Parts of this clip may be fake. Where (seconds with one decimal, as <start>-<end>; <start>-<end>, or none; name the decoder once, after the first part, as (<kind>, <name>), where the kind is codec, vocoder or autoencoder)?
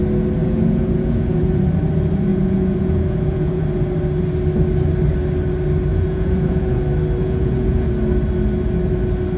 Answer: 0.4-1.6 (vocoder, Vocos); 2.3-3.6; 5.9-6.8; 7.2-7.9